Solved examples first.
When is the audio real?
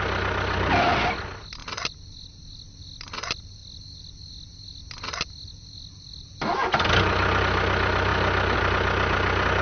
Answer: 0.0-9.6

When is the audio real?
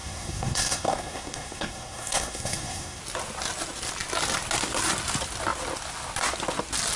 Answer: 3.0-7.0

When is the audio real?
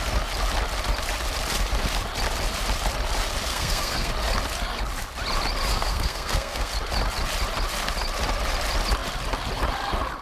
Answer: 0.0-3.5; 4.1-5.7; 6.7-10.2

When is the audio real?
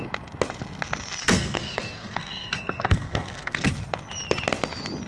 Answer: 0.0-1.2; 3.7-5.1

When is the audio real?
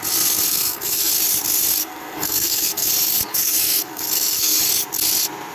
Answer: 0.0-0.5; 1.1-1.8; 2.9-3.3; 4.6-5.5